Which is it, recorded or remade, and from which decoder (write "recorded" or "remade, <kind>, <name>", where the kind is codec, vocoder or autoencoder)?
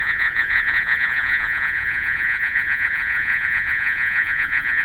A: remade, vocoder, Vocos